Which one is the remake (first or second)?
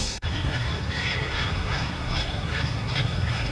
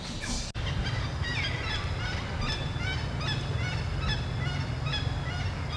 first